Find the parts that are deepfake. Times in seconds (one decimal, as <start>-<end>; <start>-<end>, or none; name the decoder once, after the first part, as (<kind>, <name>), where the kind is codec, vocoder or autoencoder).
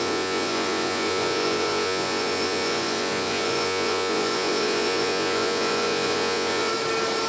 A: 0.0-6.7 (vocoder, Vocos)